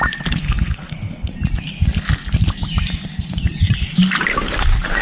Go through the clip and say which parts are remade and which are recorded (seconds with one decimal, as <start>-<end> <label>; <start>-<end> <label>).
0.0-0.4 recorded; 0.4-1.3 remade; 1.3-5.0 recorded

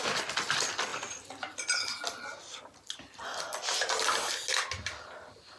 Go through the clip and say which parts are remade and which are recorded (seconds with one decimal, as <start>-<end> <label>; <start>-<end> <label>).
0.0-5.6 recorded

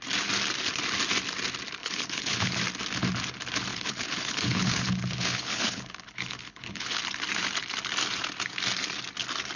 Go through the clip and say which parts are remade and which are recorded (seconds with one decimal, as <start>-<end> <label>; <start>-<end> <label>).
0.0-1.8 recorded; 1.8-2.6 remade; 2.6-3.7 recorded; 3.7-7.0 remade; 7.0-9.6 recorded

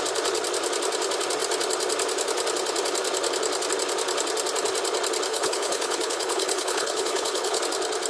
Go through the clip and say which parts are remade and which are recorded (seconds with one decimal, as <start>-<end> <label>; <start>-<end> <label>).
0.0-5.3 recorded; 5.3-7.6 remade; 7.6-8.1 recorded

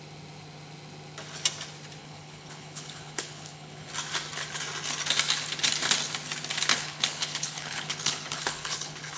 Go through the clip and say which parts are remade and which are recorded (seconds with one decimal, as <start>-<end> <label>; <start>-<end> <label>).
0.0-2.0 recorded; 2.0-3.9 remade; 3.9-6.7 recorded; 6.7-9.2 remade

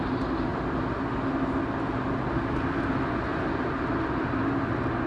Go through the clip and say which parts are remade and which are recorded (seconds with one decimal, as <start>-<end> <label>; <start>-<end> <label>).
0.0-5.1 recorded